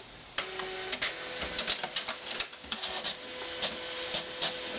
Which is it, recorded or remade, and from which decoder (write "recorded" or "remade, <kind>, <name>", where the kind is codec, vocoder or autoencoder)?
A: recorded